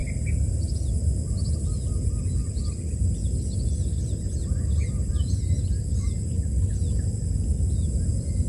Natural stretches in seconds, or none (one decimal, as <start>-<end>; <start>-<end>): 0.0-8.5